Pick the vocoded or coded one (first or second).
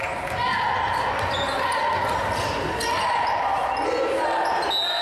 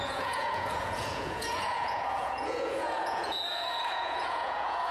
second